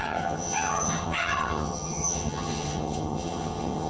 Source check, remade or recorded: remade